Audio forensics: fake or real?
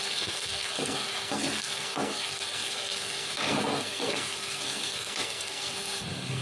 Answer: fake